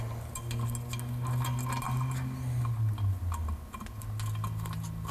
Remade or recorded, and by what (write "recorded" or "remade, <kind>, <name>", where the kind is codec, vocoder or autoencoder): recorded